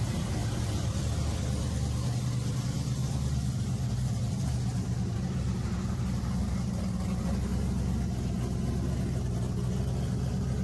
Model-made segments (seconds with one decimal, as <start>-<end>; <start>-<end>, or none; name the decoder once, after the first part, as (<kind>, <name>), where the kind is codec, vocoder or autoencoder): 0.4-2.2 (vocoder, BigVGAN v2); 3.0-4.5